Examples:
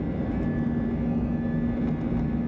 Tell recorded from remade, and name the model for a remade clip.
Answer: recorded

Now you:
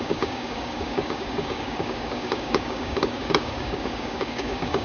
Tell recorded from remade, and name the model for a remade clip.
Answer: remade, codec, DAC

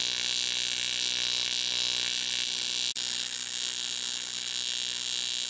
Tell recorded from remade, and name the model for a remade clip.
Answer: recorded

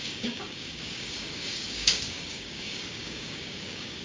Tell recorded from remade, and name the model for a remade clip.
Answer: remade, codec, DAC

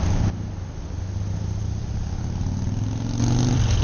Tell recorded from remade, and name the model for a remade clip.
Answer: recorded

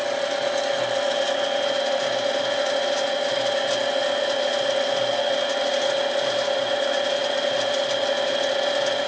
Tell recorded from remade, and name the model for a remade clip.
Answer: recorded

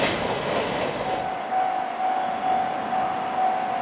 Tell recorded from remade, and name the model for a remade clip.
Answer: recorded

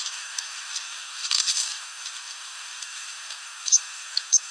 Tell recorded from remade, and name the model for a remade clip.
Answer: remade, codec, DAC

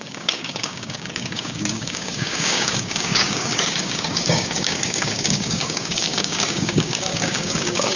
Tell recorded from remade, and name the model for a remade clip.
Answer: remade, codec, DAC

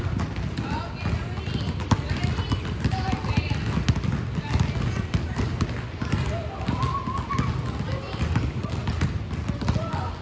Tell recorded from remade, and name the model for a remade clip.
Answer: recorded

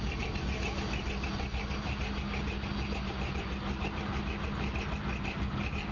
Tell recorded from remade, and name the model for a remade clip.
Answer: recorded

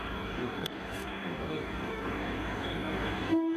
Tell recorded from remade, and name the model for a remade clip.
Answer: remade, codec, DAC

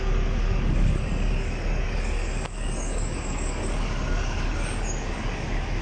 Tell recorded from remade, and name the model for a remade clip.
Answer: remade, codec, DAC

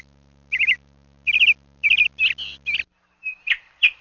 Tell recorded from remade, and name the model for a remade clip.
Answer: recorded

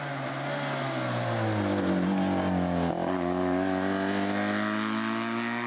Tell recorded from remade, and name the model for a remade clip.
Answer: recorded